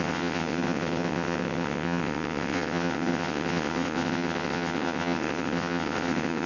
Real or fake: fake